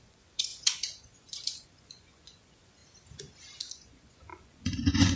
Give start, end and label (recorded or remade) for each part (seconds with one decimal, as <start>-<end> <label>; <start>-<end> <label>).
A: 0.0-2.8 remade; 2.8-3.7 recorded; 3.7-5.2 remade